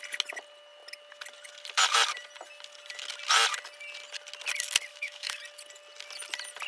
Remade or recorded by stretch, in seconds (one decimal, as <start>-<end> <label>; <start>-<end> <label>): 0.0-4.9 recorded; 4.9-5.4 remade; 5.4-6.7 recorded